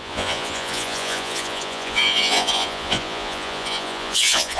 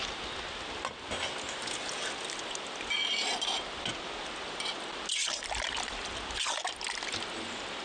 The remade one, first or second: first